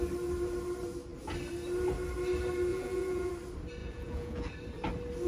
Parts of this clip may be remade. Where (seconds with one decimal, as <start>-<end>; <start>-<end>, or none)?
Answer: 2.7-3.3; 3.8-4.5

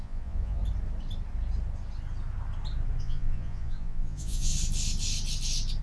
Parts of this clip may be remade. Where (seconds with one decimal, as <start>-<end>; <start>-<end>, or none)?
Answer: 0.0-0.6; 3.0-4.5

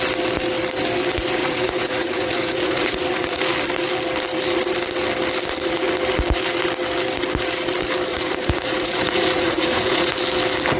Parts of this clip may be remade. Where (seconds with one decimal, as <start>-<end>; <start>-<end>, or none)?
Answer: 1.4-3.4; 8.1-10.1

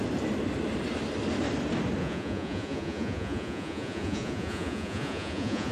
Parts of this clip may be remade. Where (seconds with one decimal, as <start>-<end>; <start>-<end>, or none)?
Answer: 2.0-5.7

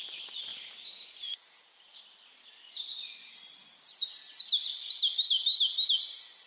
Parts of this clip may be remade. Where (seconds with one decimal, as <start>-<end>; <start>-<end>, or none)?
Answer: 0.5-1.9

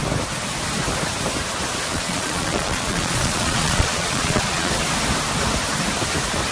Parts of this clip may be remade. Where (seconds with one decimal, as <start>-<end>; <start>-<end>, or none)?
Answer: 1.9-4.7

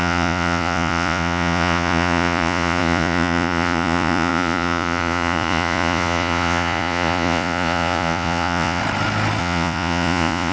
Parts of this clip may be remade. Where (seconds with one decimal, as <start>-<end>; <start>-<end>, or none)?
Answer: 0.0-8.8; 9.4-10.5

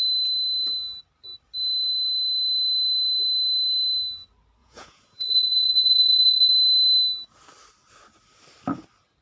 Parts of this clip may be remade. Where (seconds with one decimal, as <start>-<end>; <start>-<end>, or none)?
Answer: 4.6-6.5